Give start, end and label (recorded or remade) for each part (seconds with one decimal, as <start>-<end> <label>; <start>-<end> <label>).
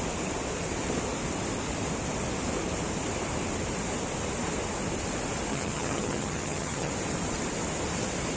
0.0-5.5 recorded; 5.5-6.9 remade; 6.9-8.4 recorded